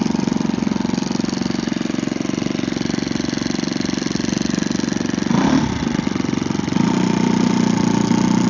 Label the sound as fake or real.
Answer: real